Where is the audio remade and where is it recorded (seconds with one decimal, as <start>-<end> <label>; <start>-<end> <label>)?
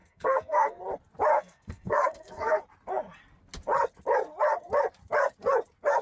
0.0-0.8 remade; 0.8-1.3 recorded; 1.3-2.6 remade; 2.6-6.0 recorded